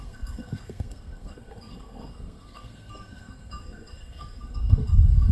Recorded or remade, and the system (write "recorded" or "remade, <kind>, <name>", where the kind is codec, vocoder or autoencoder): remade, codec, SNAC